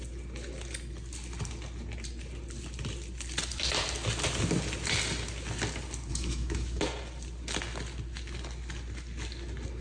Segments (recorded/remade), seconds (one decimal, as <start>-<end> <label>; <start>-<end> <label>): 0.0-6.1 recorded; 6.1-6.8 remade; 6.8-9.8 recorded